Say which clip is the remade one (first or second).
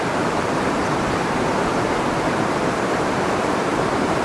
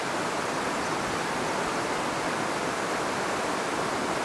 first